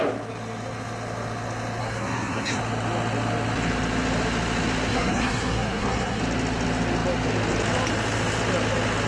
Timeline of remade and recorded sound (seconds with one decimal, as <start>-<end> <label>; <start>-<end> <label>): 0.0-1.8 recorded; 1.8-2.6 remade; 2.6-4.9 recorded; 4.9-6.2 remade; 6.2-9.1 recorded